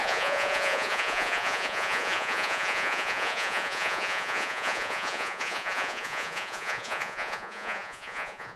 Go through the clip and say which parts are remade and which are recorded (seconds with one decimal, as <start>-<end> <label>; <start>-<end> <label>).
0.0-8.6 remade